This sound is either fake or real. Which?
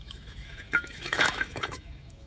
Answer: fake